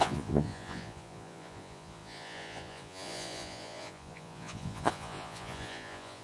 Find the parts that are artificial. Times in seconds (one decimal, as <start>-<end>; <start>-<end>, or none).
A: 0.0-6.2